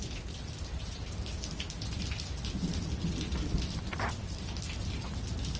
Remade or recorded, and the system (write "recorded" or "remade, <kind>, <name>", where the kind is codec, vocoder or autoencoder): recorded